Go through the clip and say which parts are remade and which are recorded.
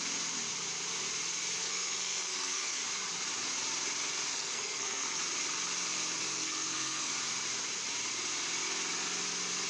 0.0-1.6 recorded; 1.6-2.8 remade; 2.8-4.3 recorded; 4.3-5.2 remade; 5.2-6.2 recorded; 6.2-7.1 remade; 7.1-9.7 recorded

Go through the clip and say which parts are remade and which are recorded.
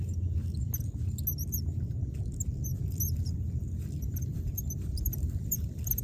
0.0-2.7 recorded; 2.7-6.0 remade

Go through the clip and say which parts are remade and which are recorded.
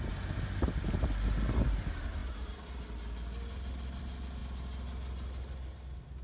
0.0-6.2 recorded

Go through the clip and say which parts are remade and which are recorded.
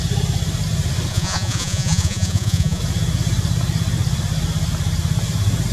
0.0-1.1 recorded; 1.1-2.8 remade; 2.8-5.7 recorded